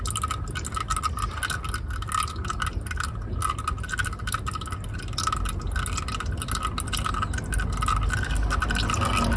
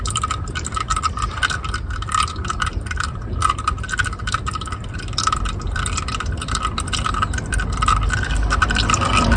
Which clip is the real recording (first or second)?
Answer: first